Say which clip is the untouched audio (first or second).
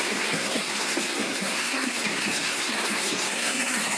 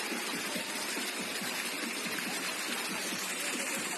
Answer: second